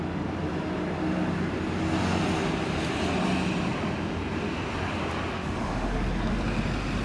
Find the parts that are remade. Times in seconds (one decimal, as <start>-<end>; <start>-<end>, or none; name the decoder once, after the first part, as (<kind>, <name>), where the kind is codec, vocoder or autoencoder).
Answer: 5.3-5.9 (autoencoder, DAC-VAE)

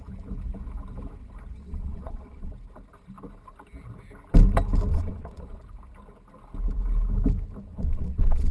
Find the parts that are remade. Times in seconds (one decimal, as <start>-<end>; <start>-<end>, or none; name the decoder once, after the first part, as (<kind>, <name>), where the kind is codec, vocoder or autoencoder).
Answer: 1.6-2.5 (vocoder, WaveNeXt); 4.9-5.6; 7.7-8.5

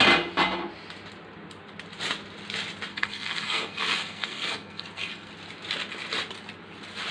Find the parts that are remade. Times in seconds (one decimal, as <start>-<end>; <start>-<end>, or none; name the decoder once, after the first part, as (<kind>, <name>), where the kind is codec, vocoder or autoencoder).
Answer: 2.9-5.3 (codec, SNAC)

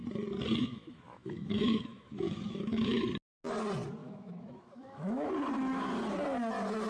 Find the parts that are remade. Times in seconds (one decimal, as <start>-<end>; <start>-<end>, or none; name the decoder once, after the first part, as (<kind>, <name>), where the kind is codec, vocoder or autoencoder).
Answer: 0.6-3.1 (autoencoder, DAC-VAE); 4.0-5.3

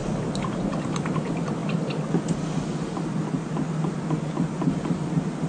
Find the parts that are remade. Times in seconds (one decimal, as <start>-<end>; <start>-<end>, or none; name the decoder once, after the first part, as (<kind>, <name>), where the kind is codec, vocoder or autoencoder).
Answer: 0.0-1.6 (vocoder, BigVGAN v2); 4.9-5.5

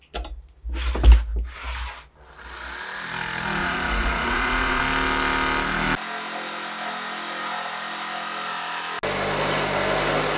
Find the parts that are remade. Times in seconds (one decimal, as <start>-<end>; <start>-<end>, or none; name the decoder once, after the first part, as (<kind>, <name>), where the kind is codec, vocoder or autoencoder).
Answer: 3.6-4.8 (vocoder, Vocos)